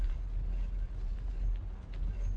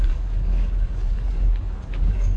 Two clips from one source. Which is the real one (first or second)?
first